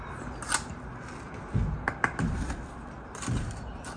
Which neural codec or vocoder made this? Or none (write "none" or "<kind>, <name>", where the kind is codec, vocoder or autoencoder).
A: none